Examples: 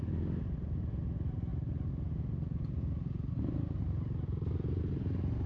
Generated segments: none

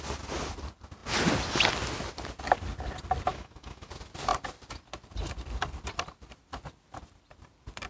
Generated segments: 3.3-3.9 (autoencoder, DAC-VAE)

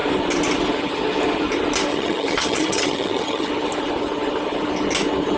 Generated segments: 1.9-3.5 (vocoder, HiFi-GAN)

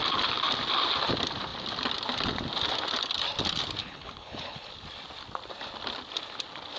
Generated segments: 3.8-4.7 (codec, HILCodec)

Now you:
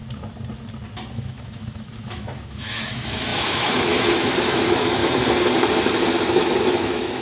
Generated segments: 1.1-5.0 (autoencoder, DAC-VAE); 6.3-7.2